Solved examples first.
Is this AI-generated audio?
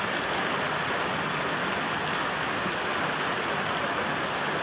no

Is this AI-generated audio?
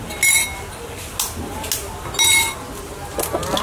no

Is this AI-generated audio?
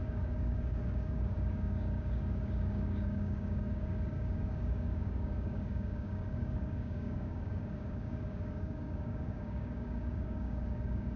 yes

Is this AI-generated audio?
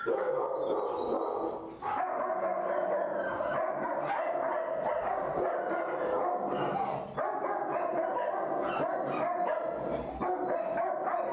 no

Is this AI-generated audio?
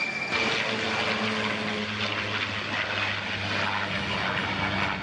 no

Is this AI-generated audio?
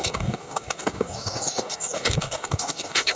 yes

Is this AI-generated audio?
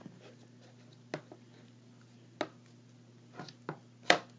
no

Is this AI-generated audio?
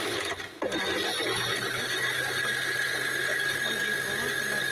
no